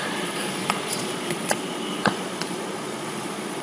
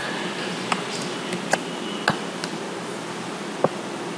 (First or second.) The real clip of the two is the second